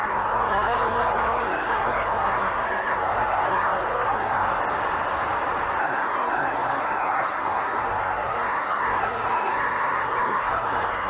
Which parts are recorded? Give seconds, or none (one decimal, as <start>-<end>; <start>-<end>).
4.6-5.8

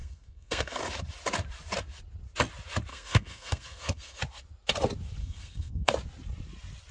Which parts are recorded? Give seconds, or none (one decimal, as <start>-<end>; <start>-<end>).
0.8-2.9; 4.2-5.2; 5.9-6.9

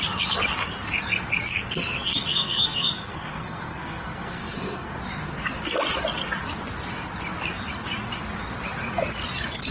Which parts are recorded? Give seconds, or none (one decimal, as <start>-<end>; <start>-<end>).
0.0-1.5; 5.0-9.7

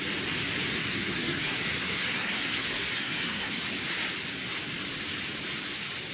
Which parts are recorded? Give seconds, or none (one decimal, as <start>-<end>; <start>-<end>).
0.0-0.8; 3.5-6.1

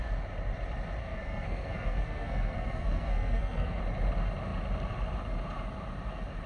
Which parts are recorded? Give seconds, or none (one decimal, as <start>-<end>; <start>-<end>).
0.0-1.0; 3.8-6.5

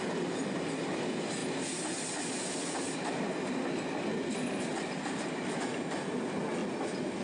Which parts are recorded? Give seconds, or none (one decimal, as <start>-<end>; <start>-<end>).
0.0-7.2

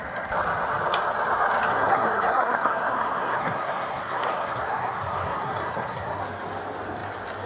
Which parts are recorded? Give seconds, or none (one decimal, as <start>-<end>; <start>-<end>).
0.0-1.7; 6.2-7.5

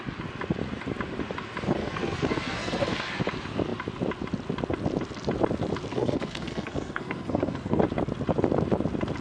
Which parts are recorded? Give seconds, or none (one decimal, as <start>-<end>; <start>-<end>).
0.0-1.8; 3.2-5.9; 7.8-9.2